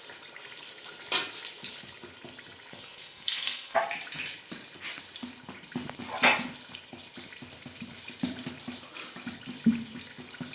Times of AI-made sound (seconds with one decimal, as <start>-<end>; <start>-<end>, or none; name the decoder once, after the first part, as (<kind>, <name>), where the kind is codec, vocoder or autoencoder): 2.7-3.8 (codec, SNAC)